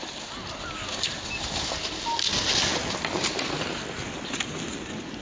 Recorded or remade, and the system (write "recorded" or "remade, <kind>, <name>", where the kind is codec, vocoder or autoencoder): recorded